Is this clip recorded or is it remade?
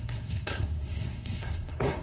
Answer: remade